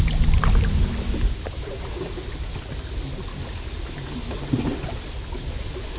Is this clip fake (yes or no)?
no